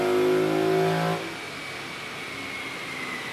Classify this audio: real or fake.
real